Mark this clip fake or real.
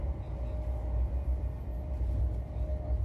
real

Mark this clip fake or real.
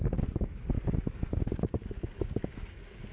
real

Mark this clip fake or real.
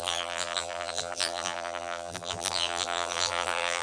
fake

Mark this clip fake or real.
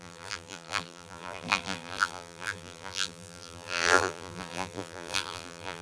fake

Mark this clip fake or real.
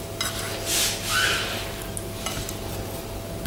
real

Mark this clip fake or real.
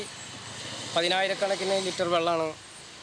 real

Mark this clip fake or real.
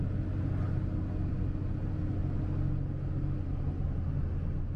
real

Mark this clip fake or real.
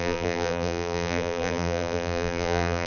fake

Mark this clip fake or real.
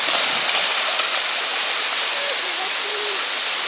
fake